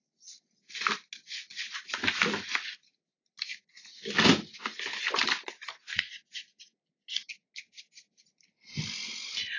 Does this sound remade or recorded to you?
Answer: recorded